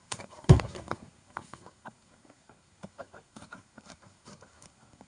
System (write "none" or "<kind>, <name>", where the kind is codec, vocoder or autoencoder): codec, SNAC